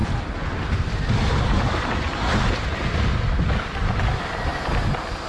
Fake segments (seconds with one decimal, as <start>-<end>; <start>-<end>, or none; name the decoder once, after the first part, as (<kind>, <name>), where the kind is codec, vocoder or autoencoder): none